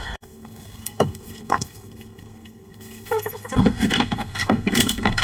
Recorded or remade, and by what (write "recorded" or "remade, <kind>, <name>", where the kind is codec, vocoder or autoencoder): remade, codec, SNAC